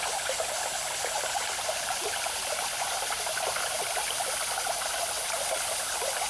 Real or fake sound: real